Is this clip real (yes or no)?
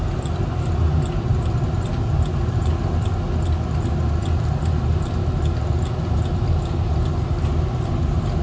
yes